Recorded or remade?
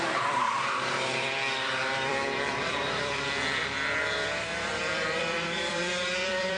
remade